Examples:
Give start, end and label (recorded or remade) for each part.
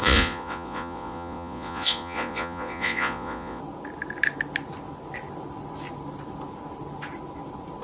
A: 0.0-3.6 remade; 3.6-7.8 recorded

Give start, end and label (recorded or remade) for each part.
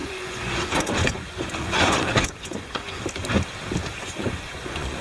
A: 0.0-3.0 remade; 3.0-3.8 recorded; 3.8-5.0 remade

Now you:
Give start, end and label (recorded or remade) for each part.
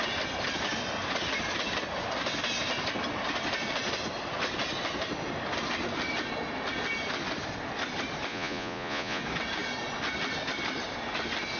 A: 0.0-8.3 recorded; 8.3-9.2 remade; 9.2-11.6 recorded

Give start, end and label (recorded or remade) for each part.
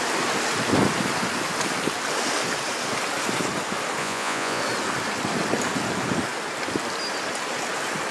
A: 0.0-4.0 recorded; 4.0-4.6 remade; 4.6-8.1 recorded